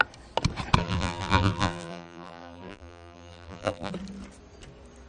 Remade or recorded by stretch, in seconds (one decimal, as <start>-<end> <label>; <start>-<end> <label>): 0.0-0.8 recorded; 0.8-3.9 remade; 3.9-5.1 recorded